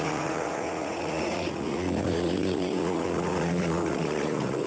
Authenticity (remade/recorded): remade